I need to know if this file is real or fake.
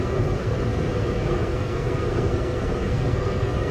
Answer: fake